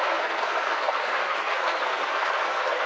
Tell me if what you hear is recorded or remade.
remade